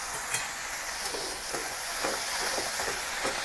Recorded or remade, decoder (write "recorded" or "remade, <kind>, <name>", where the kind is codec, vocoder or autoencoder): remade, vocoder, Vocos